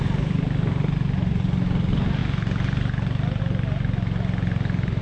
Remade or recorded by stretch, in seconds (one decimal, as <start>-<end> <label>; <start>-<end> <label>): 0.0-5.0 recorded